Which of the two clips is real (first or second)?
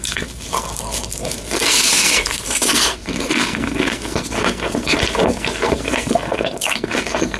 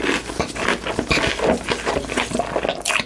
second